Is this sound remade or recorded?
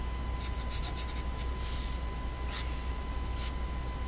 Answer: recorded